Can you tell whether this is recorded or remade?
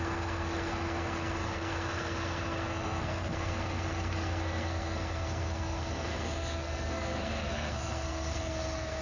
remade